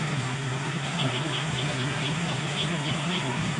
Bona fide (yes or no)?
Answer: no